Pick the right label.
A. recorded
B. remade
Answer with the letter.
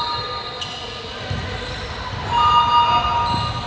A